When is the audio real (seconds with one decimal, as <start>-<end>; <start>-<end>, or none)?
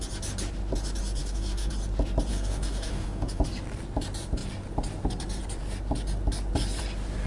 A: 0.0-1.2; 1.7-2.3; 3.4-7.3